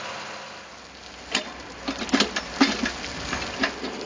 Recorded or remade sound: recorded